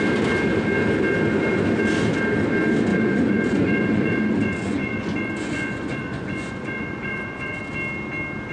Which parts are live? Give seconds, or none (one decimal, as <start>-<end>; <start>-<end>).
0.0-2.9; 7.6-8.5